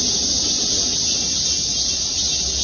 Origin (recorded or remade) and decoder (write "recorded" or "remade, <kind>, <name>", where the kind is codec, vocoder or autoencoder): recorded